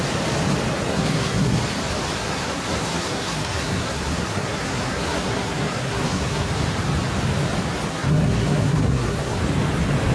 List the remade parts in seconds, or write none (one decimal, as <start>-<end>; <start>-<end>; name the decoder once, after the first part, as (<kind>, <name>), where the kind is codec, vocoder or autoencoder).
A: 0.9-1.6 (codec, SNAC); 2.2-6.5; 7.9-9.4